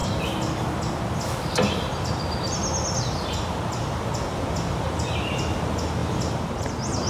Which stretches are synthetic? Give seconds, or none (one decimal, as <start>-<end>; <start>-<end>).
none